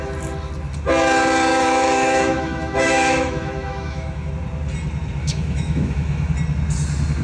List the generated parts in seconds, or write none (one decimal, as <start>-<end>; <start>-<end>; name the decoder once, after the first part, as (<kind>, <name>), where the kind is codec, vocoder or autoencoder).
1.5-4.3 (autoencoder, DAC-VAE); 5.2-6.3